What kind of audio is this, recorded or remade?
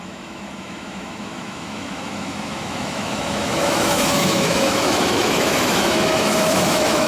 remade